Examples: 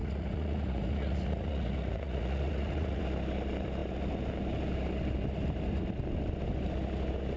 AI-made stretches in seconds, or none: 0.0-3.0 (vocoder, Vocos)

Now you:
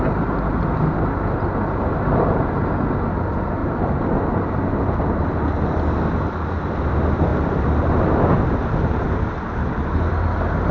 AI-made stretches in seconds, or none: none

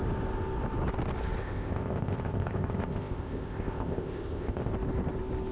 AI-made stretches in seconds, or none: 1.4-4.7 (codec, ZipCodec)